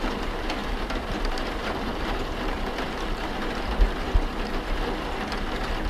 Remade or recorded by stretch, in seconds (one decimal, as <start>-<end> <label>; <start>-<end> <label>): 0.0-0.6 recorded; 0.6-4.1 remade; 4.1-5.9 recorded